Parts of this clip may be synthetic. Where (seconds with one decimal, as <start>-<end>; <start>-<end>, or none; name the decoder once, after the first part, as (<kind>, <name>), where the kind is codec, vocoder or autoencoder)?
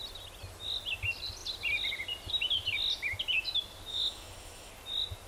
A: 3.9-4.7 (autoencoder, DAC-VAE)